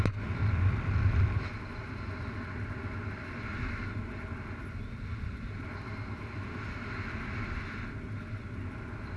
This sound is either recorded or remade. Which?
recorded